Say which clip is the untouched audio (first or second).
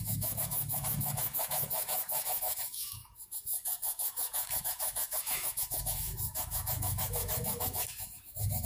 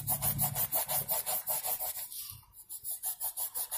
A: second